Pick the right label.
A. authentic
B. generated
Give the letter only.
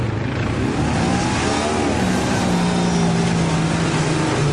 A